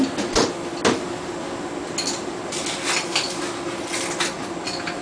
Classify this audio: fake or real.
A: real